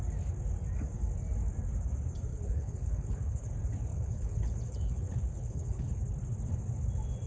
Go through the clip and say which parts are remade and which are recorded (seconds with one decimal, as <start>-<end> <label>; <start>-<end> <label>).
0.0-2.3 recorded; 2.3-3.5 remade; 3.5-3.9 recorded; 3.9-6.0 remade; 6.0-7.3 recorded